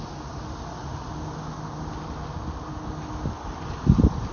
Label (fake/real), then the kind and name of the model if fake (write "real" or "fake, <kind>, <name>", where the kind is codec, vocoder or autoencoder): real